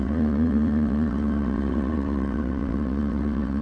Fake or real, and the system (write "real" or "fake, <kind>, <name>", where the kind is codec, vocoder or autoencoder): fake, vocoder, WaveNeXt